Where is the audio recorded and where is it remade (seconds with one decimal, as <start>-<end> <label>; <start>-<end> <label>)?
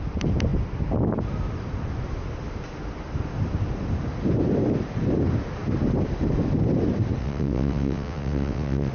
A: 0.0-7.2 recorded; 7.2-8.9 remade